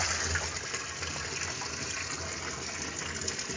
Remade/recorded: recorded